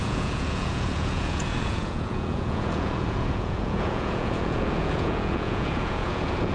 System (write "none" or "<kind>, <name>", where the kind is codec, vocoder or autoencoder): vocoder, Vocos